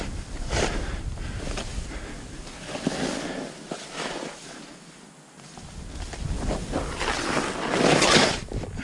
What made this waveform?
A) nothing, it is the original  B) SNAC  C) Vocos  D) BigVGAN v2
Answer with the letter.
A